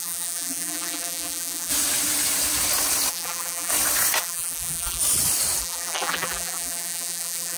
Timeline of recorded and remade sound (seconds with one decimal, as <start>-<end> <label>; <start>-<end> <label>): 0.0-1.7 remade; 1.7-3.1 recorded; 3.1-3.7 remade; 3.7-4.2 recorded; 4.2-5.0 remade; 5.0-5.6 recorded; 5.6-7.6 remade